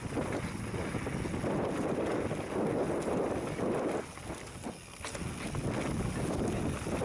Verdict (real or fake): real